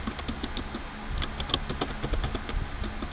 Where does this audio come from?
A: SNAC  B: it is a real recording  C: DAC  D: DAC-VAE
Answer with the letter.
B